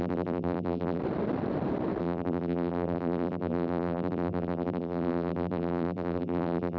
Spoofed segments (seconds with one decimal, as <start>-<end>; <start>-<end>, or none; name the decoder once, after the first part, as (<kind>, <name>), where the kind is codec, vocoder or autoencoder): 0.0-1.0 (vocoder, BigVGAN v2); 2.0-6.8